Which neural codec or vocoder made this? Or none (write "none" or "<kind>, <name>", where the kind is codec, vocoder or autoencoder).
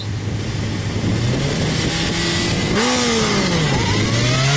none